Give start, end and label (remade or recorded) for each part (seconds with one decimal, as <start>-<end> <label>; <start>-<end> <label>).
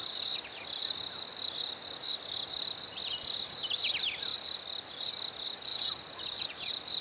0.0-4.3 recorded; 4.3-4.9 remade; 4.9-5.7 recorded; 5.7-7.0 remade